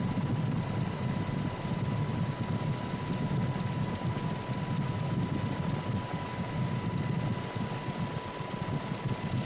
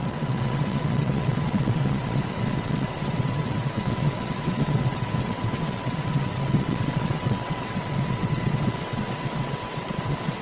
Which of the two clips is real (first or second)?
first